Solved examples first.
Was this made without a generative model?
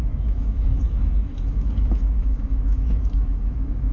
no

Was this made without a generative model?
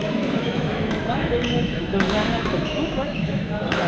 no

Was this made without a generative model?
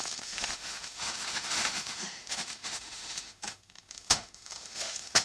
no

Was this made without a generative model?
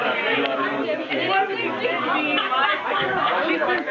yes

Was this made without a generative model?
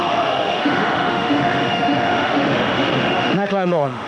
no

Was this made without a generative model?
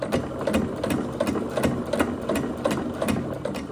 yes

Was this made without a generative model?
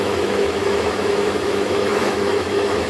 no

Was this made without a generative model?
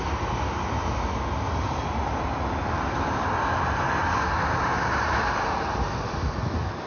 yes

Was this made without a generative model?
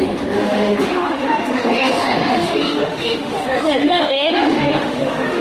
no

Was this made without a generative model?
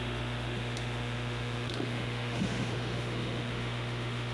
no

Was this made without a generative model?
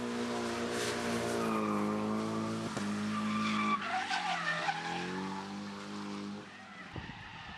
yes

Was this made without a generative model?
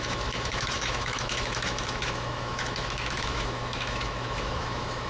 no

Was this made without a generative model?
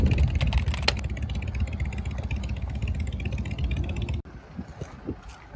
yes